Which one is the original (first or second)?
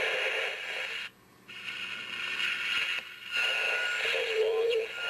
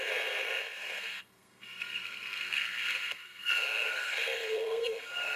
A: first